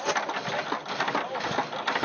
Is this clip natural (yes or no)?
yes